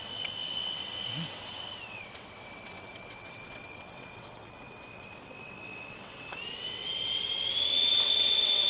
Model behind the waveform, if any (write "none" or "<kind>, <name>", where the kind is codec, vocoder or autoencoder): vocoder, WaveNeXt